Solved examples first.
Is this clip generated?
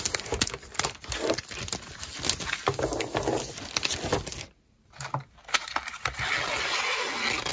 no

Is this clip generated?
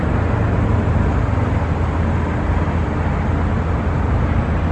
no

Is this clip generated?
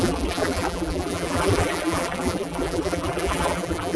yes